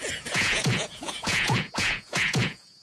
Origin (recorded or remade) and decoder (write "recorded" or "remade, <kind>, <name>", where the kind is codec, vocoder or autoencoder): remade, vocoder, Vocos